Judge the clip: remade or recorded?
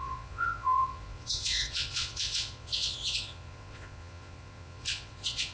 remade